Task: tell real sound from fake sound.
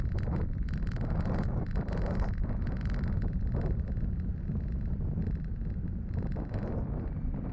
real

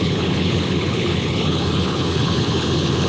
fake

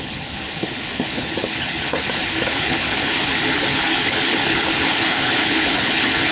fake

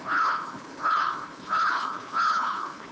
fake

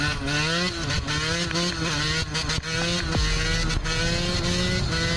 real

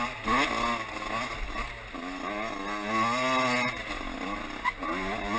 real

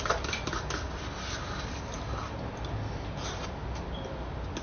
real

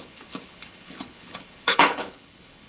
fake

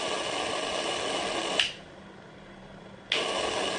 real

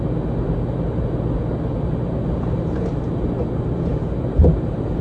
real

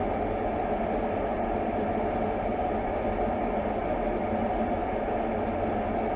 real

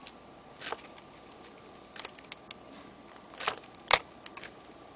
real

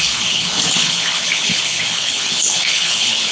fake